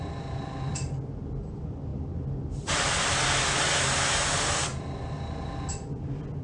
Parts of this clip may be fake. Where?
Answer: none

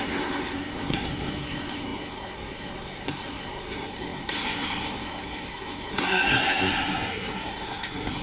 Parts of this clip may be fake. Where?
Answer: 0.0-8.2 (codec, SNAC)